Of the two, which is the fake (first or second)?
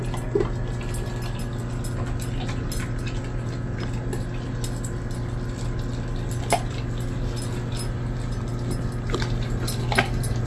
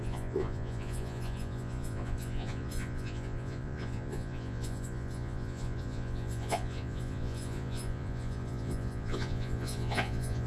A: second